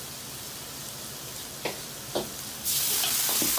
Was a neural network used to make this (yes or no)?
no